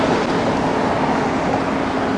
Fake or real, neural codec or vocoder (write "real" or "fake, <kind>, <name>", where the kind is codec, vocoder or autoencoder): real